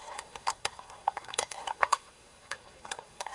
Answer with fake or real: fake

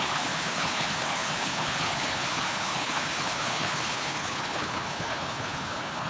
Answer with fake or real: fake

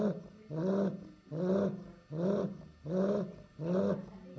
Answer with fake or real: real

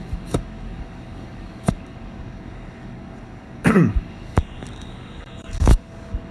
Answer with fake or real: fake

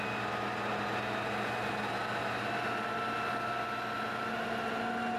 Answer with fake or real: real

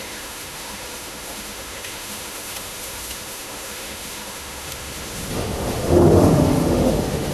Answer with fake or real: fake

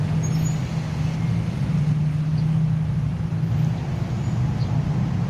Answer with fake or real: real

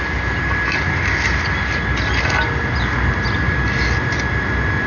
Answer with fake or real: real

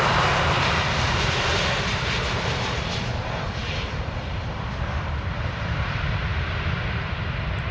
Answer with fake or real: fake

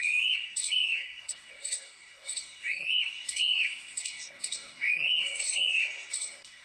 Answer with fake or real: fake